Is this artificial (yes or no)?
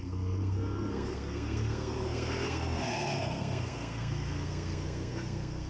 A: yes